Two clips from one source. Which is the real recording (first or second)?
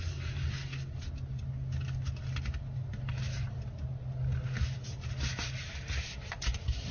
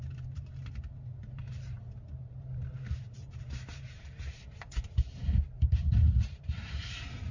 first